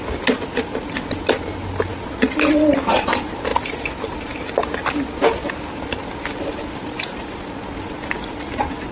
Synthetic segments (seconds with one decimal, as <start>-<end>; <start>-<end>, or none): none